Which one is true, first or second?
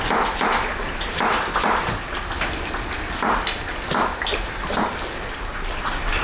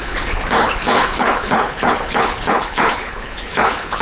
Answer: first